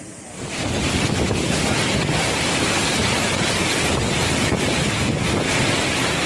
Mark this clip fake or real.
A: real